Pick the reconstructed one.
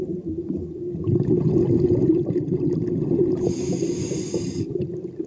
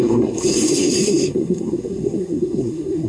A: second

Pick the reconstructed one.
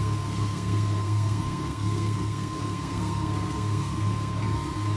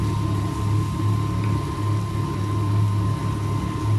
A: first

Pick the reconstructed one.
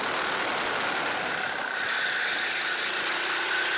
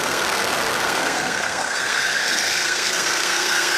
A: second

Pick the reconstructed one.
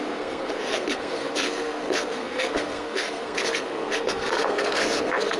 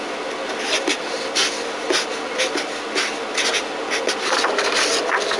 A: first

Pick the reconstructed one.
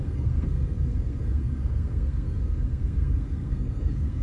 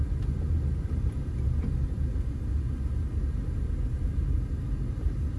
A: first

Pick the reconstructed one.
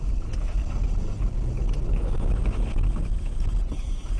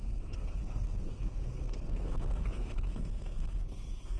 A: second